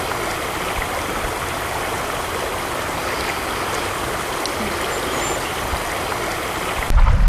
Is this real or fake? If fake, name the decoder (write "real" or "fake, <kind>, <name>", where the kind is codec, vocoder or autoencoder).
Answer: real